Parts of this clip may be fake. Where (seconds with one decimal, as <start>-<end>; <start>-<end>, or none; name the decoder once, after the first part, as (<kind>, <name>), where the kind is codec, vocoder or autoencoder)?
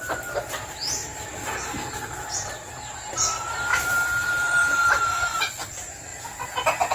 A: 1.0-1.8 (vocoder, BigVGAN v2); 3.7-5.4